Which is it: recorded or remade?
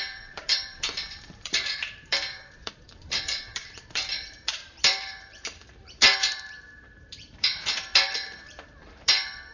remade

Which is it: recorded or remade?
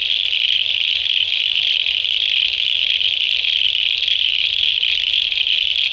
recorded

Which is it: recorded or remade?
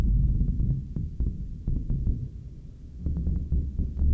remade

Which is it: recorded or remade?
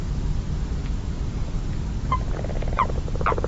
recorded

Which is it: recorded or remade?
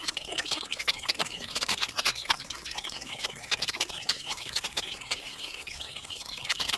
remade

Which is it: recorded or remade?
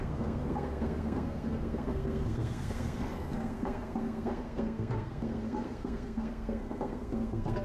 remade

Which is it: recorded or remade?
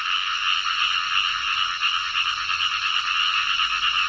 recorded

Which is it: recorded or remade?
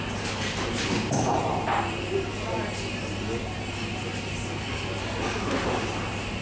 recorded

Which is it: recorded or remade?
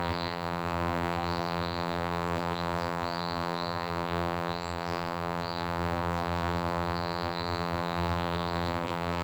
remade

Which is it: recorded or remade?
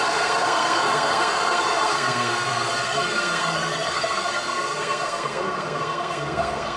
remade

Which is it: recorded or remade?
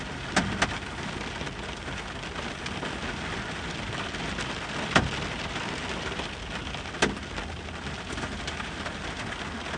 recorded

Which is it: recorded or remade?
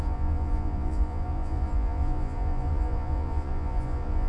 remade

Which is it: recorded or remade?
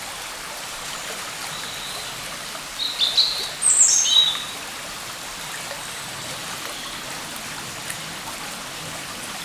recorded